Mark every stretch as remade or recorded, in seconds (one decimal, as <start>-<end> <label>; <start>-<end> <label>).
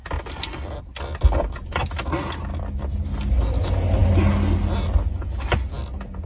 0.0-6.3 recorded